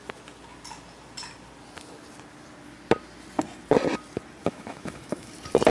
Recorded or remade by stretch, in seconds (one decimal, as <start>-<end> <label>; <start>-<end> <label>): 0.0-4.4 recorded; 4.4-5.3 remade; 5.3-5.7 recorded